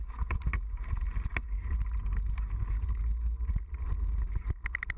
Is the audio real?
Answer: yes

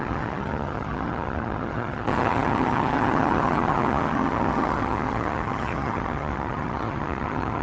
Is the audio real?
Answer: no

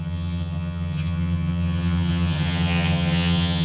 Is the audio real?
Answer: no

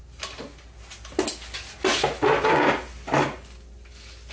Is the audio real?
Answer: yes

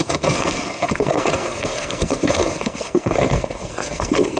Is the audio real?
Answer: no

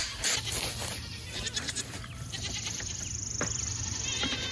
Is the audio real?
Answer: no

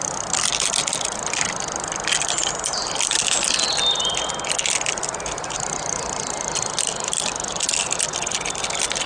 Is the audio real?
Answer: yes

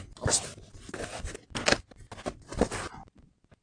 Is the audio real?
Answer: yes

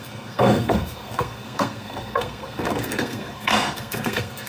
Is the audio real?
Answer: no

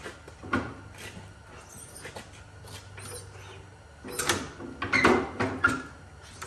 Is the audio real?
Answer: yes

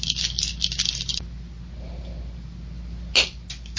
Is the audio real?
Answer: yes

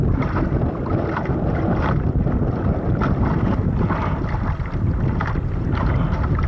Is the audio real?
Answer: yes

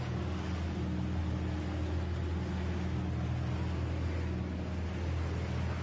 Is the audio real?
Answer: yes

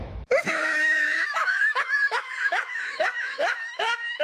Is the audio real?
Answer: no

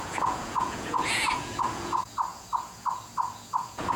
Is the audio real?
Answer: no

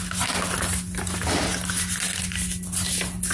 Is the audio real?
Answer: yes